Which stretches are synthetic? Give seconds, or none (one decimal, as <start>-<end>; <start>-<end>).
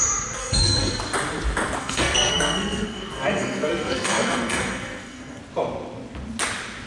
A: 0.4-1.0; 1.8-5.4